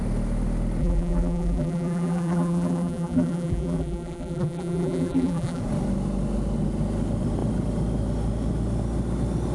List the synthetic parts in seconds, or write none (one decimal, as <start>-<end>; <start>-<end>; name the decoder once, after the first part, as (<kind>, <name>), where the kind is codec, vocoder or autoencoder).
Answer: 0.8-5.6 (vocoder, BigVGAN v2)